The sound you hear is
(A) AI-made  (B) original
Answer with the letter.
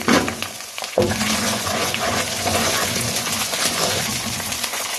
A